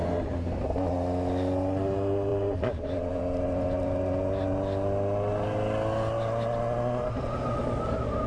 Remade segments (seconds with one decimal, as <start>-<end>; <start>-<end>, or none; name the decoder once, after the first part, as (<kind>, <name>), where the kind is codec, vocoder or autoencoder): 2.3-3.2 (vocoder, BigVGAN v2)